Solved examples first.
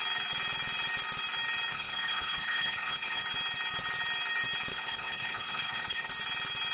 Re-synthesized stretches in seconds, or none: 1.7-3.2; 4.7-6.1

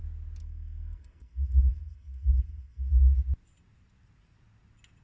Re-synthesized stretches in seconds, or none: 0.4-2.9

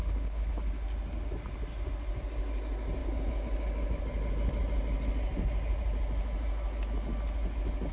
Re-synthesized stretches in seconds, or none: 0.0-0.5

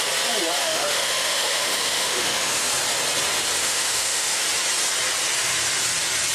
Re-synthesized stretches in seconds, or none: 0.6-2.6; 3.6-4.4

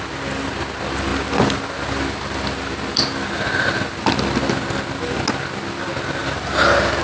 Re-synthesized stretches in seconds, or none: none

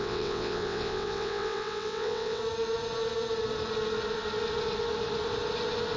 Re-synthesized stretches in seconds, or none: 0.0-2.4

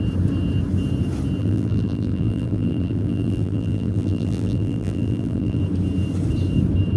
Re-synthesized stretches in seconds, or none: 1.4-5.6